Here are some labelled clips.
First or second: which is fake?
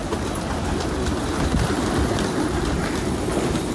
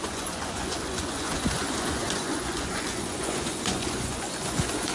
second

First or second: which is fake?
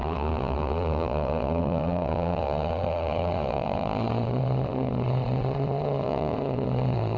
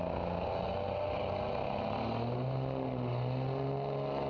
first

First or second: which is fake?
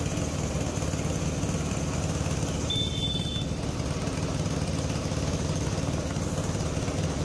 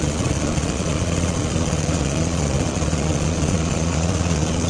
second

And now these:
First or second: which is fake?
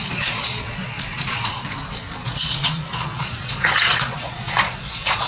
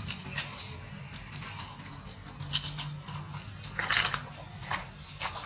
first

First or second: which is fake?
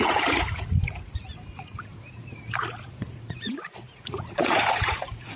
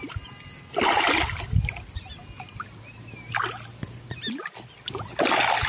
first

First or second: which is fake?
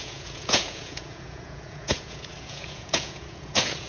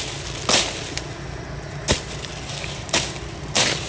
first